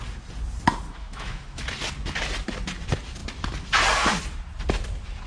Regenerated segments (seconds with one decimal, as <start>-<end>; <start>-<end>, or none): 0.9-1.6